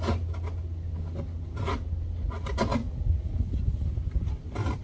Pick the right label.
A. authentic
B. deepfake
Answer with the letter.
A